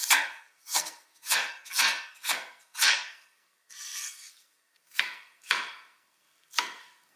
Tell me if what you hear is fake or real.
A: fake